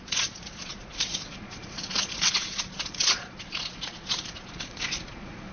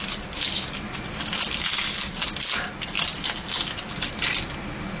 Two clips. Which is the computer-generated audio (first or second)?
first